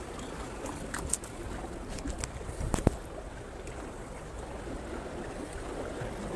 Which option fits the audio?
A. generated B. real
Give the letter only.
B